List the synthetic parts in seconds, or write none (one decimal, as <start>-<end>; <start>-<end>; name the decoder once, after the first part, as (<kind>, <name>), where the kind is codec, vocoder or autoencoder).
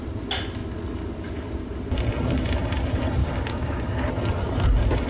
3.2-4.1 (codec, DAC)